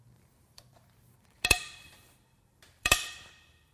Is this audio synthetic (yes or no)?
yes